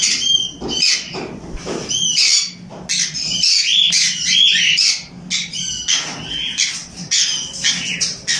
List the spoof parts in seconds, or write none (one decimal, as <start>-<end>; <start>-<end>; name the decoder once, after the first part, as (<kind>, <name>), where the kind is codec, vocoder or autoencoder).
none